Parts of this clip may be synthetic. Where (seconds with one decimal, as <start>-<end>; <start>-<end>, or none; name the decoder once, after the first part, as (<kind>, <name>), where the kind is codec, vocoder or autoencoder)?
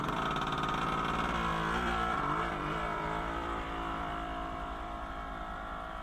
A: 1.5-5.1 (vocoder, BigVGAN v2)